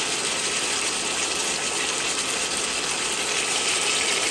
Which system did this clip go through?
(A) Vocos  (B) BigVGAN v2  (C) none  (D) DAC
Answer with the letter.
C